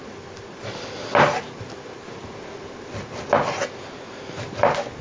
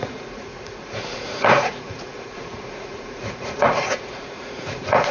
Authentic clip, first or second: first